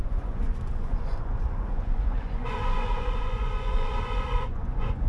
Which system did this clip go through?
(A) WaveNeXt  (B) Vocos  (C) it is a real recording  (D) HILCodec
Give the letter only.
B